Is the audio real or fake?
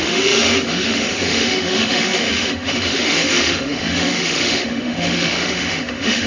fake